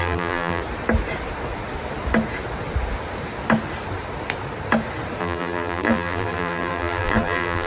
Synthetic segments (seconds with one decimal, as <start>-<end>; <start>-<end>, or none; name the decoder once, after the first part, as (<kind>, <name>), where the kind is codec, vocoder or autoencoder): 0.0-0.6 (vocoder, BigVGAN v2); 5.2-7.7